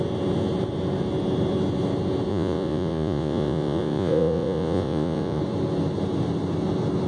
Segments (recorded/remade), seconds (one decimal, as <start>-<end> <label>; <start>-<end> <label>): 0.0-2.3 recorded; 2.3-5.4 remade; 5.4-7.1 recorded